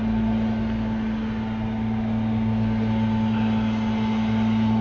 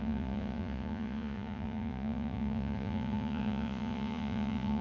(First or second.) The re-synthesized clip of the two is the second